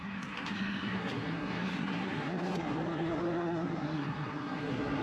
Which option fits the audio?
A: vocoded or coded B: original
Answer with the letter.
A